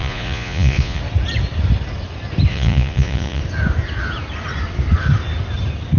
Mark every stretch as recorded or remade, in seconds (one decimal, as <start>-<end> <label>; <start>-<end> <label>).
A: 0.0-1.0 remade; 1.0-2.5 recorded; 2.5-3.4 remade; 3.4-6.0 recorded